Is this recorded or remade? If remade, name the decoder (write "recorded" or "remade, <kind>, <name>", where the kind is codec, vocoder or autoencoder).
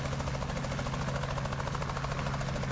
recorded